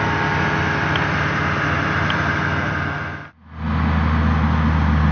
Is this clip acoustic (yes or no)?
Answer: yes